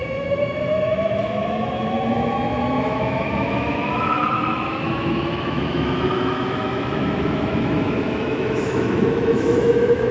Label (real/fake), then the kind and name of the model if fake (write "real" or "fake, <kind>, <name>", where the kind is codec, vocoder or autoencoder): fake, autoencoder, DAC-VAE